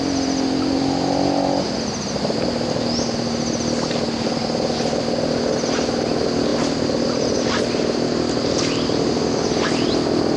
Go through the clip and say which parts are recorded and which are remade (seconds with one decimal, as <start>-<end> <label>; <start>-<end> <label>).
0.0-10.4 recorded